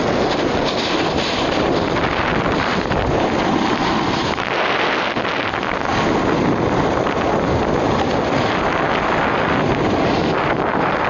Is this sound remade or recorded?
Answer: recorded